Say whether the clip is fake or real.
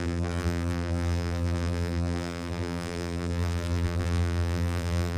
fake